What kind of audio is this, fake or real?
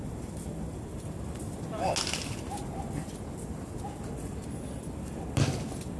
real